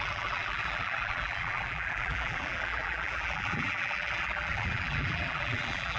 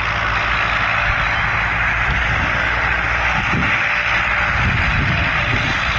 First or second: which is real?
second